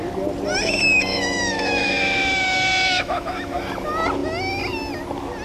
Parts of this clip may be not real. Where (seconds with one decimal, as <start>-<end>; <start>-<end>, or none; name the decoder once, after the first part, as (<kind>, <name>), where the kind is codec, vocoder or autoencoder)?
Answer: 1.1-3.6 (autoencoder, DAC-VAE)